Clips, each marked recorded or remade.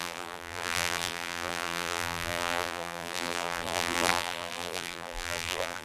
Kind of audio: remade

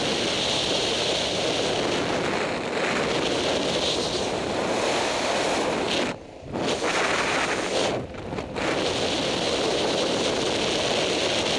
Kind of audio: recorded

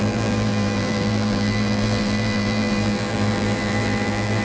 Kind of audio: remade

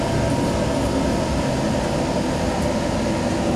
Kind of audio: recorded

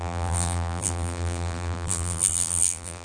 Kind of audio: remade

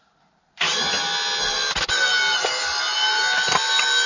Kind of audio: recorded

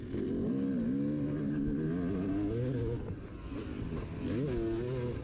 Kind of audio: recorded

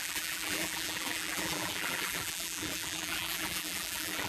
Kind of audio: remade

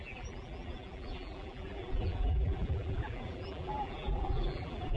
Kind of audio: remade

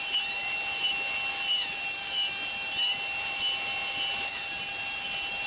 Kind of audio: recorded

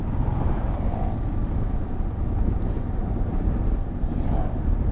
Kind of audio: remade